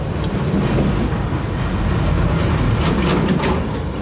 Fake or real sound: real